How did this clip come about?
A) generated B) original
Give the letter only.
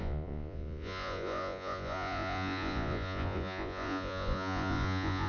A